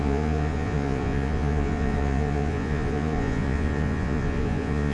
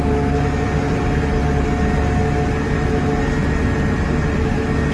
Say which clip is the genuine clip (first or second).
second